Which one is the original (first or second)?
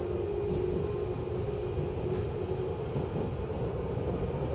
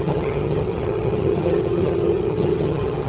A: first